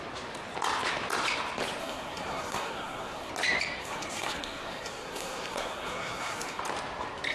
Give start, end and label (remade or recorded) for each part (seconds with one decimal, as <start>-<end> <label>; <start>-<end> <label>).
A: 0.0-1.8 recorded; 1.8-3.3 remade; 3.3-3.8 recorded; 3.8-6.6 remade; 6.6-7.3 recorded